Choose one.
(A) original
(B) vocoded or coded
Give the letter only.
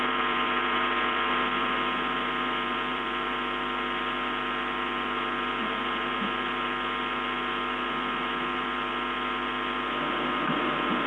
B